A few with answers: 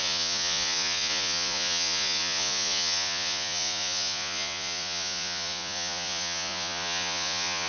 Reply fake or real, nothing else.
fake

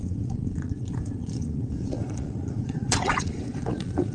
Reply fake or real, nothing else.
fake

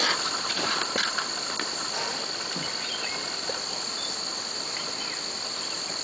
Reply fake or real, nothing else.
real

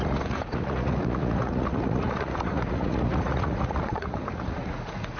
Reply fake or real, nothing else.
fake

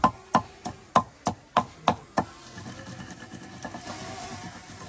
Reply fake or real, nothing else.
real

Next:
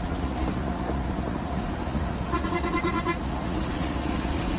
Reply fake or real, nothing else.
fake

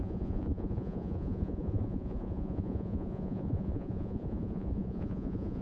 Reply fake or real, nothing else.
fake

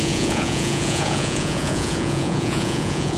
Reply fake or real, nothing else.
fake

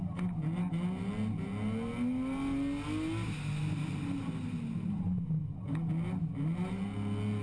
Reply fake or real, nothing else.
real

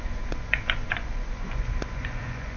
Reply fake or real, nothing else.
fake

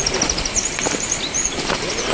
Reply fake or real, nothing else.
real